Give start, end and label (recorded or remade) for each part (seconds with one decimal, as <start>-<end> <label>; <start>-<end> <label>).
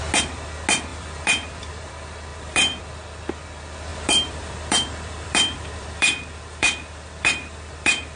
0.0-0.9 recorded; 0.9-1.9 remade; 1.9-2.3 recorded; 2.3-2.8 remade; 2.8-3.9 recorded; 3.9-8.2 remade